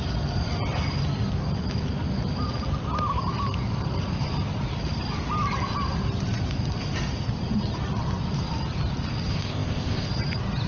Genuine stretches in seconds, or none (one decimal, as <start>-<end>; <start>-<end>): 0.0-9.3; 10.1-10.7